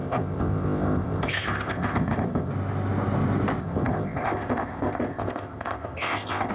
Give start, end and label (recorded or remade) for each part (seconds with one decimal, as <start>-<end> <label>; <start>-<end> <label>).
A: 0.0-2.5 remade; 2.5-3.6 recorded; 3.6-6.5 remade